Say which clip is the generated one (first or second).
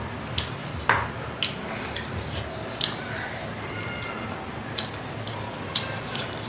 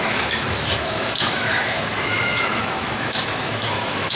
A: second